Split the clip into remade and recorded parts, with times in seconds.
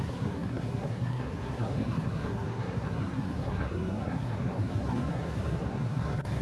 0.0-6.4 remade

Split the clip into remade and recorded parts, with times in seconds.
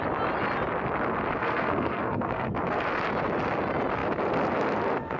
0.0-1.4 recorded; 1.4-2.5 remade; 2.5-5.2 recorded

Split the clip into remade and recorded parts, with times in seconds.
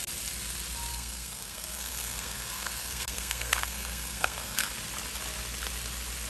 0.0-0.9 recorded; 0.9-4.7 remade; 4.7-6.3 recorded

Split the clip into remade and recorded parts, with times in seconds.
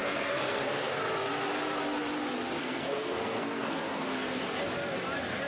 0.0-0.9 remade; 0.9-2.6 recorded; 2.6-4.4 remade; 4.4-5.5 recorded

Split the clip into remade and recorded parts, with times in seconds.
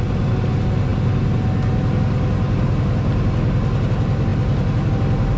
0.0-5.4 recorded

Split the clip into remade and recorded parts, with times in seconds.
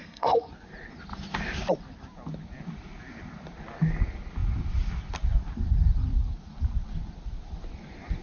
0.0-0.5 remade; 0.5-8.2 recorded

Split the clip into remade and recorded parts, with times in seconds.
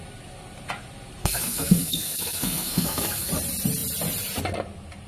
0.0-1.2 recorded; 1.2-3.3 remade; 3.3-5.1 recorded